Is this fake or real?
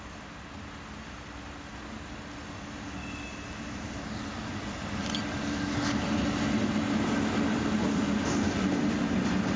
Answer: real